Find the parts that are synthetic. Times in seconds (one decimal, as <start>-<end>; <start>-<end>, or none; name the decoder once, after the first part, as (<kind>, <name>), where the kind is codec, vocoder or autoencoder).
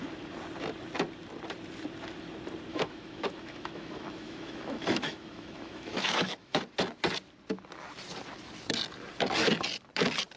2.7-6.6 (autoencoder, DAC-VAE)